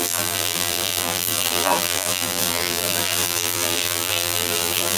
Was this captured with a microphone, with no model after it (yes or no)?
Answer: no